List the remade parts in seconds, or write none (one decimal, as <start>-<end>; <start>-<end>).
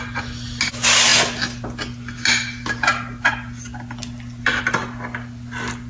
none